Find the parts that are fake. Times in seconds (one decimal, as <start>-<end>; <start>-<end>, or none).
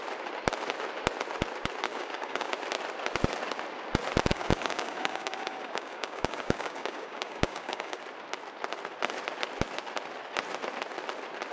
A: 1.9-2.5; 4.3-8.0